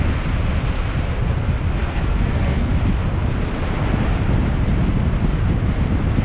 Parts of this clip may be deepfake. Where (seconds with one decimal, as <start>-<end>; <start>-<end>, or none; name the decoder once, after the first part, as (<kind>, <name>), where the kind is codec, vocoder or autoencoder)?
1.8-2.7 (codec, SNAC)